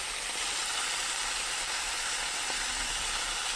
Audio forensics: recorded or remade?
remade